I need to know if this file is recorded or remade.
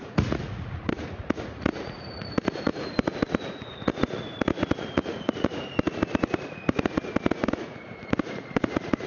remade